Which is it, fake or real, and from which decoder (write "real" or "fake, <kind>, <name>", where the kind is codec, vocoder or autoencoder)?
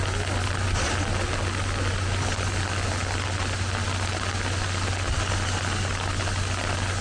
real